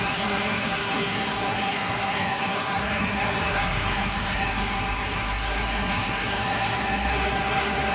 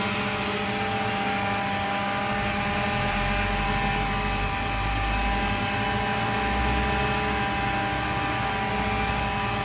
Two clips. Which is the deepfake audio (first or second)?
first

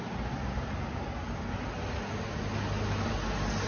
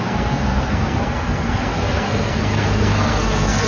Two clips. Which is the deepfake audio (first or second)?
second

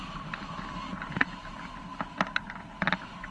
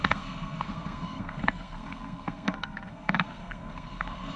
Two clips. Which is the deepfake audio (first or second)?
second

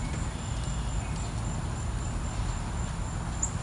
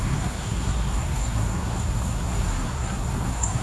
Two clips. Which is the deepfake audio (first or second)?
second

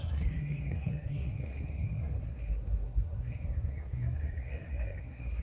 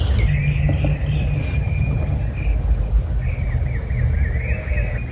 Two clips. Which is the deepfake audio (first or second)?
first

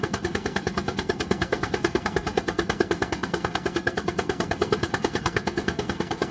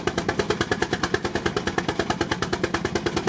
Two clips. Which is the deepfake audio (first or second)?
first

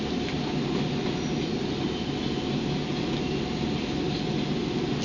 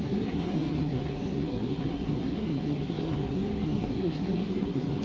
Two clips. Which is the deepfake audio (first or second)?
second